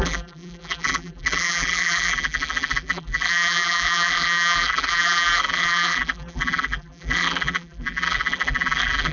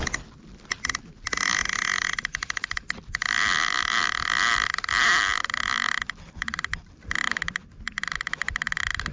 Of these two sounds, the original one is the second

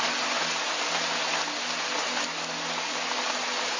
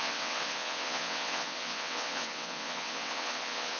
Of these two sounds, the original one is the first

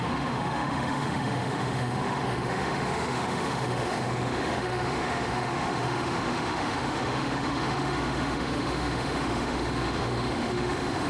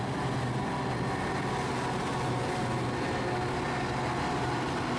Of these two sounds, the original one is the second